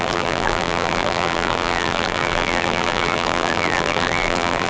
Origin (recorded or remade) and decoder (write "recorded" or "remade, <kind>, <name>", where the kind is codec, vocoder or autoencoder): remade, vocoder, BigVGAN v2